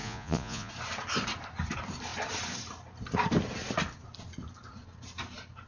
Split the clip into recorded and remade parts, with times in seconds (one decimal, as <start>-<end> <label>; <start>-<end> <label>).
0.0-0.7 remade; 0.7-5.7 recorded